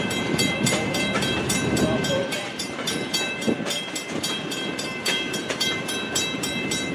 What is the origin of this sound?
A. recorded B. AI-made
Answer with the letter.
B